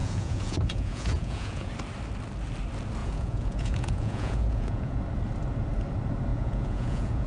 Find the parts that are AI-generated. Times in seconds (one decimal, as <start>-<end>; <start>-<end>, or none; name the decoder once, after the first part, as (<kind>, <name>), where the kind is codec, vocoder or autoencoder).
0.0-1.7 (vocoder, Vocos); 3.0-5.0; 6.3-7.3